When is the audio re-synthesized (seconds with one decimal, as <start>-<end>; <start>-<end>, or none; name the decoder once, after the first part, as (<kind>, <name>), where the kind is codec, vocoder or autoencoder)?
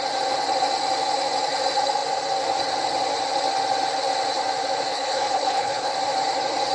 4.9-5.9 (codec, HILCodec)